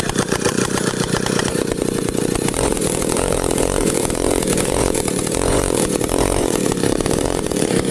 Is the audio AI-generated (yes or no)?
yes